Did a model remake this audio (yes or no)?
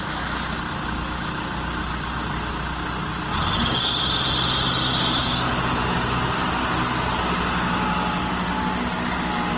no